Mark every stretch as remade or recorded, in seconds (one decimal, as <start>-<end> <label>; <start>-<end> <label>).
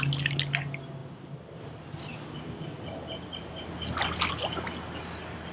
0.0-5.5 recorded